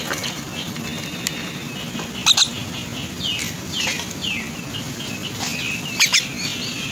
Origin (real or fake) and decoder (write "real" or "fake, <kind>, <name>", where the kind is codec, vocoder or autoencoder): real